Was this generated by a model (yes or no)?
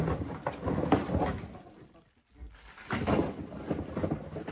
no